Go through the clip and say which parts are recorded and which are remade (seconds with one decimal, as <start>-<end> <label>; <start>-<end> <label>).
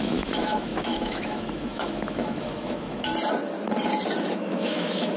0.0-3.1 remade; 3.1-4.2 recorded; 4.2-5.2 remade